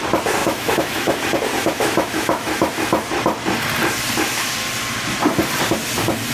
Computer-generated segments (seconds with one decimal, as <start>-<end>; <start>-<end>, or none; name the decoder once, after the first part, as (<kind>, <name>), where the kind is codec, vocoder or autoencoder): 0.4-1.2 (autoencoder, DAC-VAE); 1.6-2.7